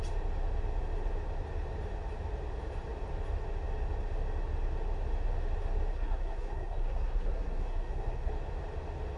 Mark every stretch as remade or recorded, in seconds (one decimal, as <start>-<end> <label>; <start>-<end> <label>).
0.0-5.9 recorded; 5.9-8.3 remade; 8.3-9.2 recorded